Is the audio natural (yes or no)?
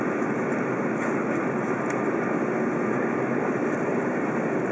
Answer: yes